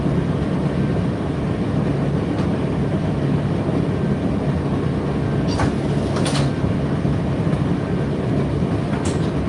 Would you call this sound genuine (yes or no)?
yes